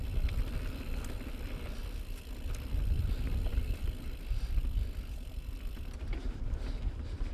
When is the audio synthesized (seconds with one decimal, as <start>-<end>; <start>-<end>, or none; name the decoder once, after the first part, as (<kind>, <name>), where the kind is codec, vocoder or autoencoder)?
0.0-7.3 (vocoder, BigVGAN v2)